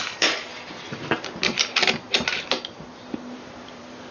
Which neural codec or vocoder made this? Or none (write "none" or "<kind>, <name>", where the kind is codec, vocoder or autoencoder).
vocoder, BigVGAN v2